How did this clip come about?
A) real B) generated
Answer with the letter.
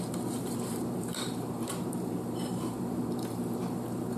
B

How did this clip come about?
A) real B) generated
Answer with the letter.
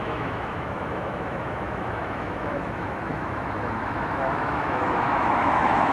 B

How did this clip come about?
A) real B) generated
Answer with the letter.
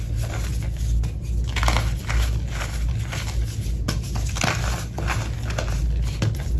A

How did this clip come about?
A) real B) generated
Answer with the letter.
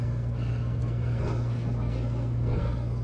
B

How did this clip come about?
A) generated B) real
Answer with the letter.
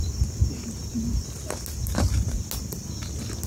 B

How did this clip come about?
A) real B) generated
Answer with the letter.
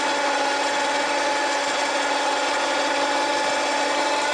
A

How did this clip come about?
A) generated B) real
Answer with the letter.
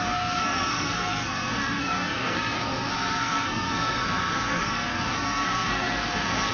A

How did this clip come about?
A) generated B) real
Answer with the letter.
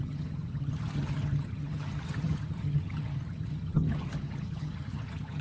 A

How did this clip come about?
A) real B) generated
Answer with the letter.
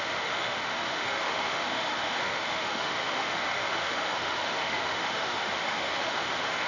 B